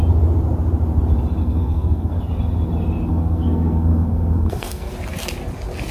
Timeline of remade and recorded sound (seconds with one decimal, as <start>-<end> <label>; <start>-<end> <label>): 0.0-1.4 recorded; 1.4-2.2 remade; 2.2-3.1 recorded; 3.1-4.9 remade; 4.9-5.9 recorded